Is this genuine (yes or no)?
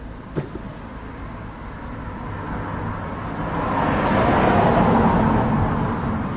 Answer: yes